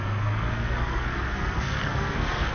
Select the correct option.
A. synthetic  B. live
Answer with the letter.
A